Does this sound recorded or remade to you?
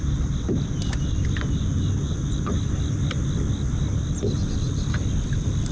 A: recorded